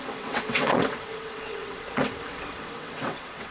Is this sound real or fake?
fake